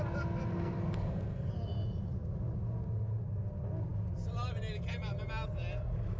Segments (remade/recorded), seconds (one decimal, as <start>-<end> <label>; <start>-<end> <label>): 0.0-0.5 recorded; 0.5-1.5 remade; 1.5-6.2 recorded